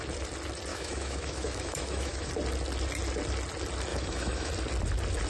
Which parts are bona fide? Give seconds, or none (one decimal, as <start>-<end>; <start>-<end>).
0.0-0.7; 2.3-3.9; 4.5-5.3

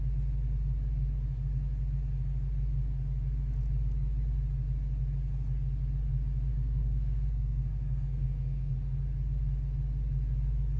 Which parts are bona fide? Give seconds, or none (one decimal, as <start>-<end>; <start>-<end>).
0.0-6.5; 8.7-10.8

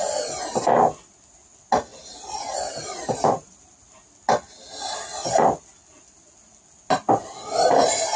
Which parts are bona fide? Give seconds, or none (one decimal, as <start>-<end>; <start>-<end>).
0.0-1.9; 6.8-8.2

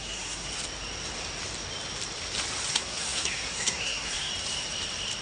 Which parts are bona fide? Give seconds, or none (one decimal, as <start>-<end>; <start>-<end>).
0.5-2.7; 4.3-5.2